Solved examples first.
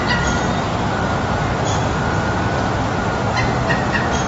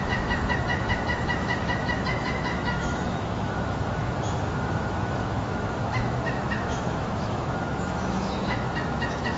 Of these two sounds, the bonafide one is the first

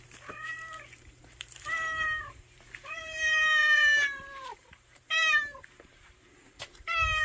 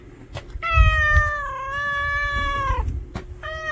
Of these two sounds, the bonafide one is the second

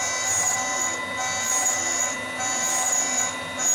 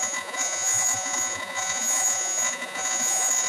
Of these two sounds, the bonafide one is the first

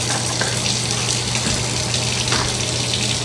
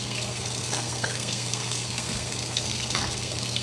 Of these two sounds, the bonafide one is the first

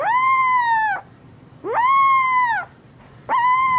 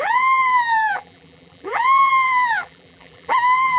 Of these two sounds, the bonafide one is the first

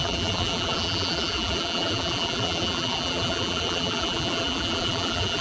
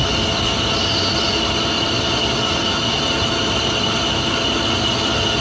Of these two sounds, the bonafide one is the second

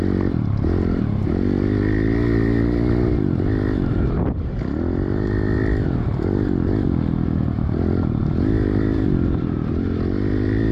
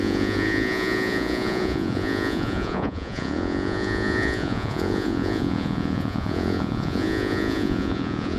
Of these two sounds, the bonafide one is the first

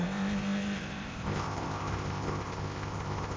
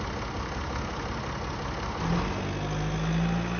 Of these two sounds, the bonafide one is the second